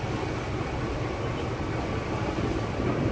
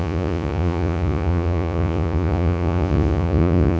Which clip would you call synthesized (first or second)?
second